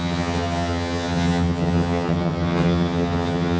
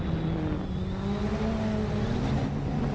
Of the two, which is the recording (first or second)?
second